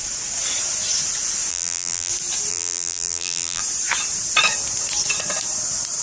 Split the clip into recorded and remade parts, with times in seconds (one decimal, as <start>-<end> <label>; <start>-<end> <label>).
0.0-1.5 recorded; 1.5-2.1 remade; 2.1-2.5 recorded; 2.5-3.6 remade; 3.6-6.0 recorded